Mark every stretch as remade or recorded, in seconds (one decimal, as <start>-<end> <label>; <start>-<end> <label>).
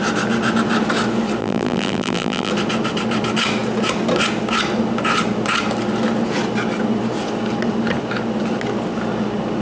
0.0-1.4 recorded; 1.4-2.5 remade; 2.5-9.6 recorded